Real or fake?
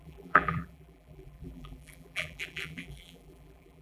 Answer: fake